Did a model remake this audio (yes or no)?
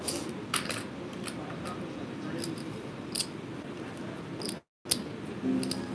no